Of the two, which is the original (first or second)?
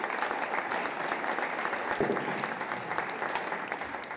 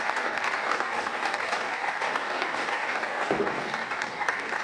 first